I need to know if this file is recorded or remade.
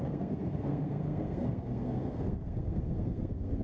remade